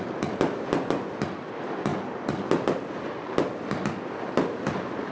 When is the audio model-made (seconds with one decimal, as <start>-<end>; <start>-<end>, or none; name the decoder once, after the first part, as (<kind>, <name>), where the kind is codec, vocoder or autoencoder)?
none